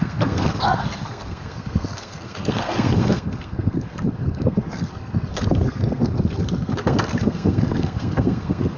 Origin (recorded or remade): remade